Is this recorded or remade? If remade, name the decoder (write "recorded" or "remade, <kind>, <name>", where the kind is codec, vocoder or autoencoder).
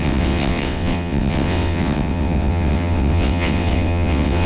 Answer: remade, vocoder, WaveNeXt